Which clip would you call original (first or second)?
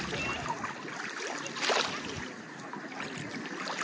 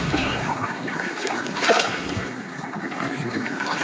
first